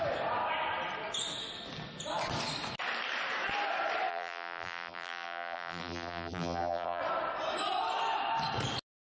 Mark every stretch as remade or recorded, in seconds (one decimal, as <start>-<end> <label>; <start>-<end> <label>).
0.0-4.1 recorded; 4.1-7.0 remade; 7.0-9.0 recorded